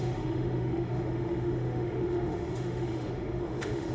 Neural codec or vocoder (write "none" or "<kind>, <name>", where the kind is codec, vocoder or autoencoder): autoencoder, DAC-VAE